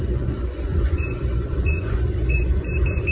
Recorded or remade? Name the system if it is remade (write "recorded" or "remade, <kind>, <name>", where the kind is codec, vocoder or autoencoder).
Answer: remade, vocoder, Vocos